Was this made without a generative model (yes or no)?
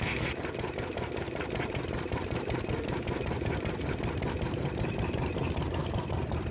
yes